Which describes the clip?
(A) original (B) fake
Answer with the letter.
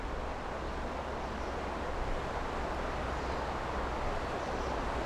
A